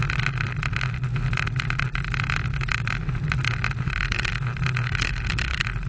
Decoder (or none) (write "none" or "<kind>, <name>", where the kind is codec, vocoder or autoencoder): none